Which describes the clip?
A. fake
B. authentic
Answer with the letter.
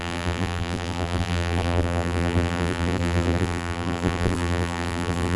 A